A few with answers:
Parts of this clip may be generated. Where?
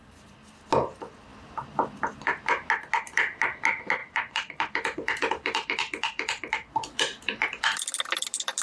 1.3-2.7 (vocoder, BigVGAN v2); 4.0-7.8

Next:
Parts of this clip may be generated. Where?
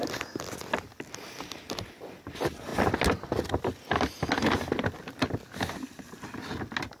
none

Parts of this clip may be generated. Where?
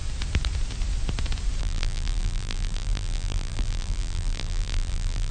1.6-5.3 (vocoder, BigVGAN v2)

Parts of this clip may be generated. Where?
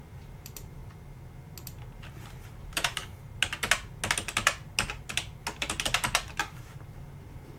0.0-0.8 (vocoder, BigVGAN v2); 2.5-3.0; 6.4-7.6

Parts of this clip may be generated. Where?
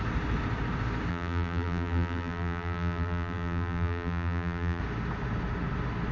1.1-4.8 (vocoder, BigVGAN v2)